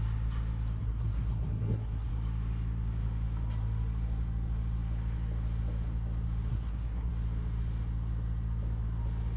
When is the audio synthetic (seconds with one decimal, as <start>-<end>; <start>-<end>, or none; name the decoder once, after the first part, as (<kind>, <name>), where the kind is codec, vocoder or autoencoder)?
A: 0.8-2.1 (codec, SNAC); 6.5-7.1